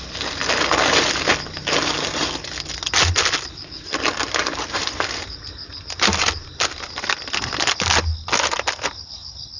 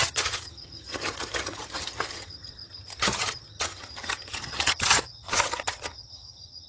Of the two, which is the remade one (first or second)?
second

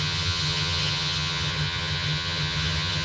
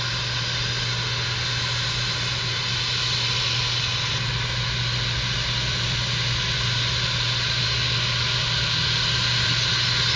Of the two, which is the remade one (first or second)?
first